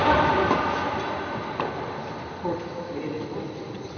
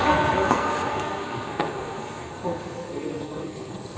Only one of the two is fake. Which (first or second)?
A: second